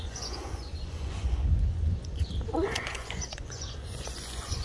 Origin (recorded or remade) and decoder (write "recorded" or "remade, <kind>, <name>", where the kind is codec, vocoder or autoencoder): remade, vocoder, Vocos